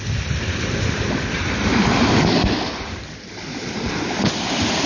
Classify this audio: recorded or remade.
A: remade